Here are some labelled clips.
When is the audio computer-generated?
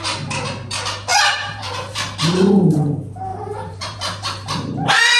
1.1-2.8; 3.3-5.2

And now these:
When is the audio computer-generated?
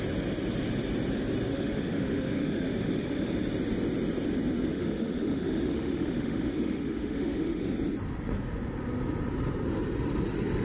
1.5-3.3; 4.7-7.6